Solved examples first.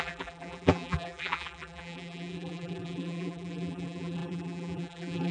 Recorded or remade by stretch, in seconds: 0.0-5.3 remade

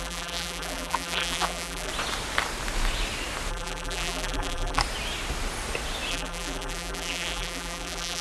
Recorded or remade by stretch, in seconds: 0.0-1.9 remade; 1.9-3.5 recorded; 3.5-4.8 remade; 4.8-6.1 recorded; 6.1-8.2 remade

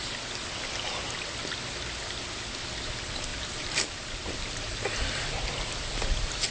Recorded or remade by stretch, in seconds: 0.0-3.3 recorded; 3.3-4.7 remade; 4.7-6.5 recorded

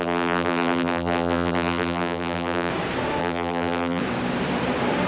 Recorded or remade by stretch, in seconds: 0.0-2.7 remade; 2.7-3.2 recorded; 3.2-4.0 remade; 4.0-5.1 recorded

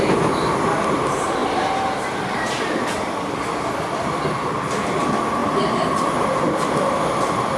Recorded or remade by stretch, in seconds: 0.0-1.4 recorded; 1.4-4.2 remade; 4.2-5.4 recorded; 5.4-6.9 remade; 6.9-7.6 recorded

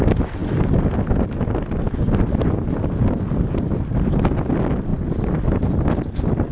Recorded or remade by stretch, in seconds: 0.0-6.5 recorded

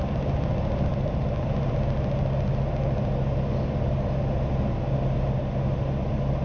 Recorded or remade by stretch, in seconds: 0.0-0.9 recorded; 0.9-1.5 remade; 1.5-6.4 recorded